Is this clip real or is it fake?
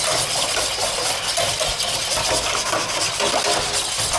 real